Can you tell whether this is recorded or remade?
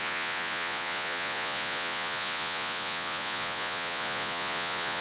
remade